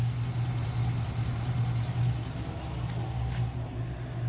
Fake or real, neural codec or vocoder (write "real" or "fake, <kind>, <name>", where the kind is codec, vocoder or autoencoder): real